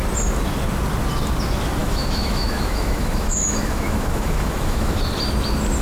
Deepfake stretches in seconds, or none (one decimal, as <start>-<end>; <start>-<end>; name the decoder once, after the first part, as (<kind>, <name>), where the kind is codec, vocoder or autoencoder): 1.8-5.0 (autoencoder, DAC-VAE)